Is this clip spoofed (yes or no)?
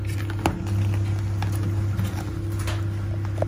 no